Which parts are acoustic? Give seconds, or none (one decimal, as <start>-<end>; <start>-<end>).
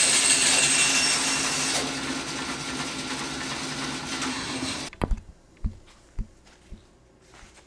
0.0-4.3; 4.8-7.7